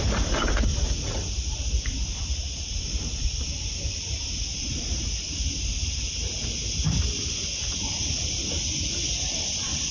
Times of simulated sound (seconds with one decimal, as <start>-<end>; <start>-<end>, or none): 0.0-0.7; 2.2-6.6; 9.3-9.9